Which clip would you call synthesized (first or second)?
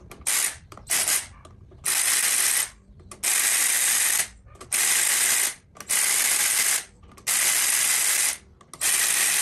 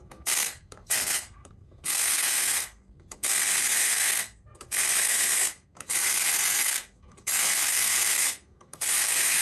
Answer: second